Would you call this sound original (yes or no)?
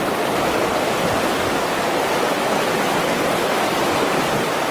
yes